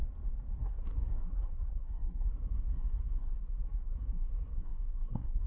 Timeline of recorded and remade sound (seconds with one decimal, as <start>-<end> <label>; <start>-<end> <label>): 0.0-0.6 recorded; 0.6-5.5 remade